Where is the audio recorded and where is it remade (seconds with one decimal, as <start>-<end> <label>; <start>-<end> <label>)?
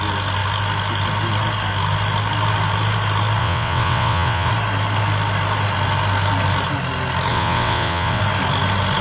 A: 0.0-3.4 recorded; 3.4-4.5 remade; 4.5-7.3 recorded; 7.3-8.2 remade; 8.2-9.0 recorded